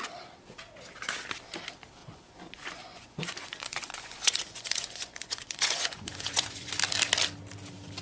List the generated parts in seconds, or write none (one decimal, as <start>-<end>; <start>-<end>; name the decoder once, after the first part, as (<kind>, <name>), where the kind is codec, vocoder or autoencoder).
2.0-6.7 (vocoder, Vocos)